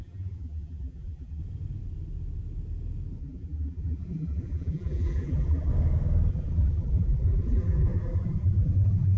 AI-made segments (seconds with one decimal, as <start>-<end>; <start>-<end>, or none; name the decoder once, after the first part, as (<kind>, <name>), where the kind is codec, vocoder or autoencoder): 0.0-1.4 (vocoder, BigVGAN v2); 3.2-5.7; 6.3-9.2